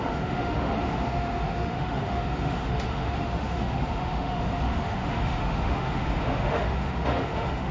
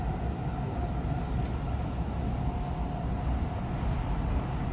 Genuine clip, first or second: second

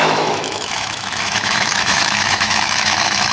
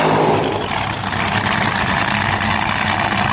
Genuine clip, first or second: second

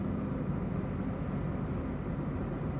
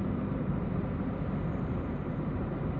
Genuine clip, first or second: first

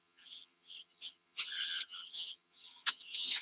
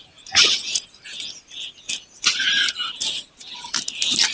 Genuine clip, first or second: second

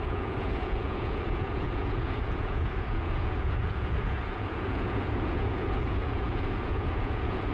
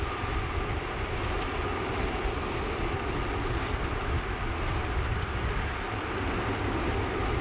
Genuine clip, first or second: second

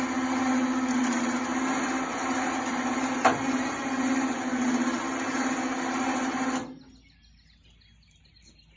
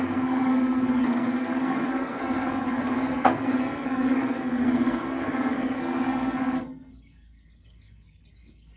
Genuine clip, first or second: first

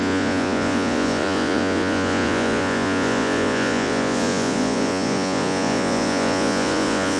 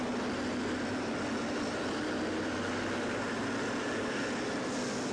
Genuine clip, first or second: second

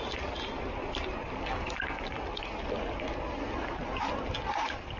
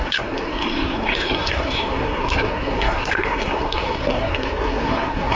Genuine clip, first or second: first